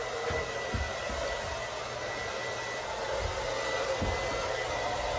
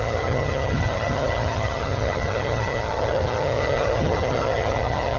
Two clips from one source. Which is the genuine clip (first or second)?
first